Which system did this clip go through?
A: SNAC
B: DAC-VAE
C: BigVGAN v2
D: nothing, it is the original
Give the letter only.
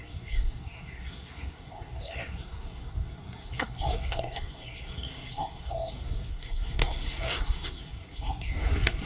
A